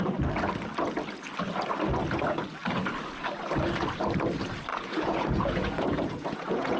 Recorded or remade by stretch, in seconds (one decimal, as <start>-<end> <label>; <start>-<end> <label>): 0.0-4.7 recorded; 4.7-6.8 remade